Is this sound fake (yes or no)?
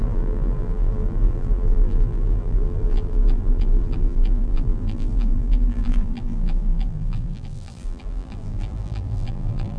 yes